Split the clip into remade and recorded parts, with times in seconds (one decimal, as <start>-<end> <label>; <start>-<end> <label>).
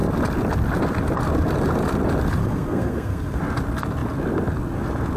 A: 0.0-2.4 recorded; 2.4-3.4 remade; 3.4-5.2 recorded